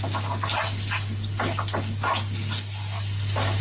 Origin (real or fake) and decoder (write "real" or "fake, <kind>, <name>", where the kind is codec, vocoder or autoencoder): real